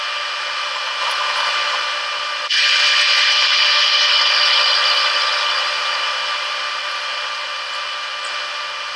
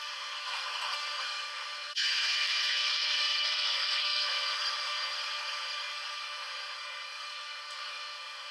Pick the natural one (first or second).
first